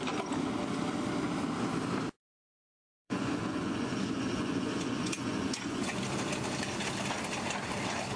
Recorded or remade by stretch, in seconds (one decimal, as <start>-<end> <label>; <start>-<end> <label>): 0.0-2.3 recorded; 2.3-6.0 remade; 6.0-8.2 recorded